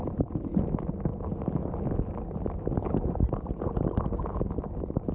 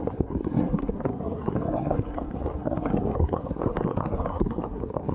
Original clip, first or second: first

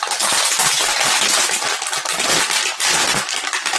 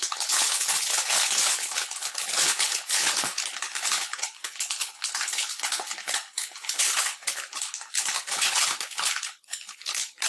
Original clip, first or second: first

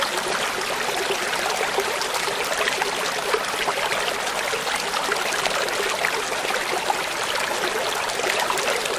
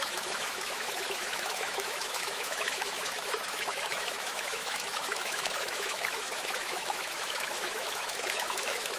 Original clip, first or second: first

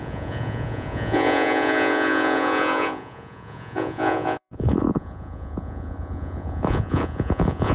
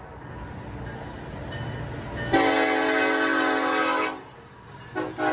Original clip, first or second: second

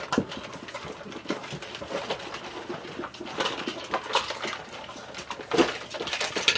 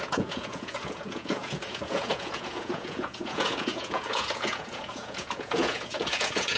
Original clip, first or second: first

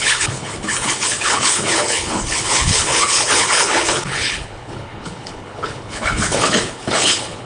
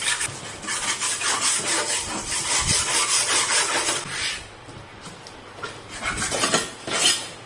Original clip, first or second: second